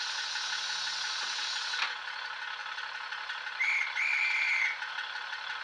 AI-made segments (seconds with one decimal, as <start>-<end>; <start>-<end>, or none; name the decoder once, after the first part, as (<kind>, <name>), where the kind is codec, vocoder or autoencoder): none